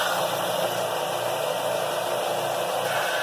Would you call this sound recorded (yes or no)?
yes